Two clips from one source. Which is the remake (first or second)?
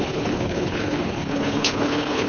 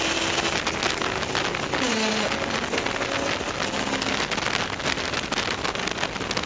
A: first